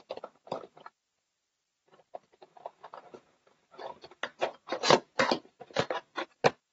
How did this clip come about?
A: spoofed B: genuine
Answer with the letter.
B